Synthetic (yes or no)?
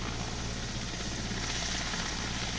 no